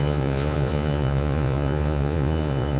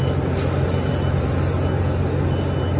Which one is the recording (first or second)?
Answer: second